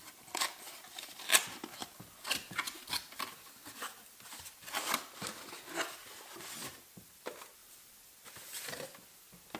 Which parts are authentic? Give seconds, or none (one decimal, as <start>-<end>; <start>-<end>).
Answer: 0.0-9.6